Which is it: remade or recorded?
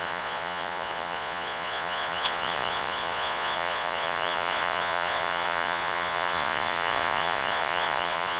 remade